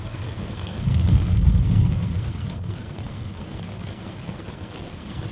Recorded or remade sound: remade